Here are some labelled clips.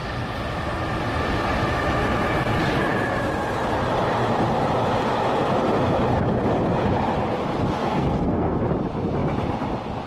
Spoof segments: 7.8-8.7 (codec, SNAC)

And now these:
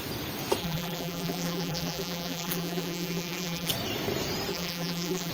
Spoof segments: 0.6-3.7 (vocoder, BigVGAN v2); 4.5-5.3

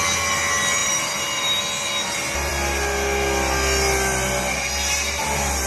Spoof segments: 0.8-1.6 (vocoder, BigVGAN v2)

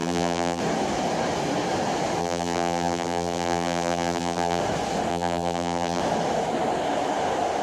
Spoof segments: 0.0-0.6 (vocoder, BigVGAN v2); 2.2-4.6; 5.1-6.0

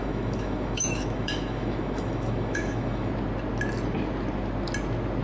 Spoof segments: 0.0-3.1 (autoencoder, DAC-VAE)